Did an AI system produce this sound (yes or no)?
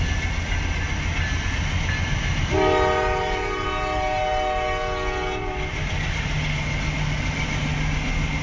no